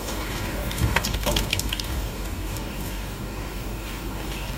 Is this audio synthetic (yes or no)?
yes